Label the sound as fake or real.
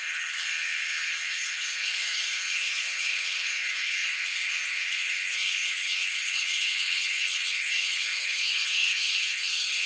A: fake